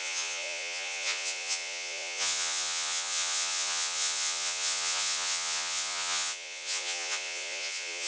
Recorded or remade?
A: remade